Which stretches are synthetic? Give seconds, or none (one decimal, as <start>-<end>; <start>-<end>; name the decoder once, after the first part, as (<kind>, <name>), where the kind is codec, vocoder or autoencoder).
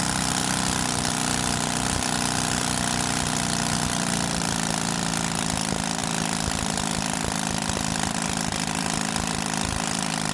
none